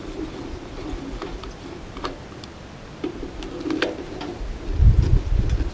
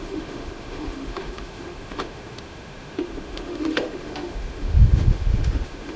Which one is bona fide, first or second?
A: first